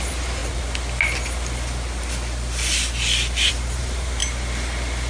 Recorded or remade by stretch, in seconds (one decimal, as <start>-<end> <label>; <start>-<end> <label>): 0.0-0.4 remade; 0.4-3.5 recorded; 3.5-4.2 remade; 4.2-5.1 recorded